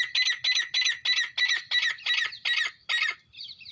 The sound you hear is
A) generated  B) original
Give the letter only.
B